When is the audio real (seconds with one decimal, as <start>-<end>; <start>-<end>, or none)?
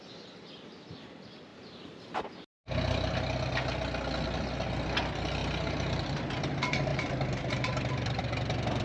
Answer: 0.0-1.5; 2.0-5.4; 6.0-6.9; 8.2-8.8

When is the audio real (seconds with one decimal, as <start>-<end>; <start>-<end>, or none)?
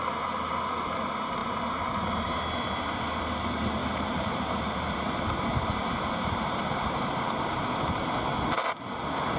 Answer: 0.0-3.8; 7.7-9.4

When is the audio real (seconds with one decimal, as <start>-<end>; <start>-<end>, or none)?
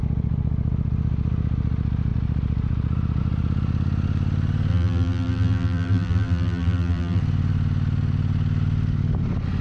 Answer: 0.0-4.7; 7.2-9.6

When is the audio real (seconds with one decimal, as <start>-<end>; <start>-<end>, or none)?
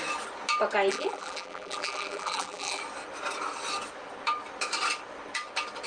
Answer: 0.0-0.9; 2.8-5.9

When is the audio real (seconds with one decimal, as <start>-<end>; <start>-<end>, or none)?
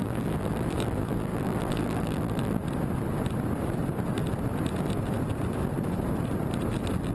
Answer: 2.6-7.1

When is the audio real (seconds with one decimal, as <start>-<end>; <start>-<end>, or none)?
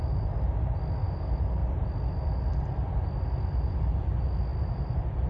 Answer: 0.0-1.6; 3.4-4.5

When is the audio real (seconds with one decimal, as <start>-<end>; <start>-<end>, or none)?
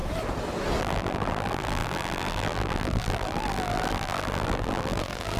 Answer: 0.0-0.8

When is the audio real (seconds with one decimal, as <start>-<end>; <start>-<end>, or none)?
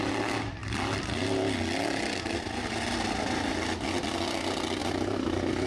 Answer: 0.0-4.8